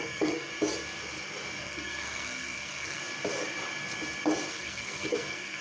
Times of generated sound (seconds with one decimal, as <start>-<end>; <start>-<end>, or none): 0.0-0.5; 1.6-3.0; 4.5-5.6